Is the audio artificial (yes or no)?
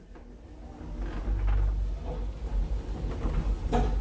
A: no